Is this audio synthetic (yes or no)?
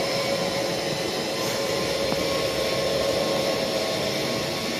no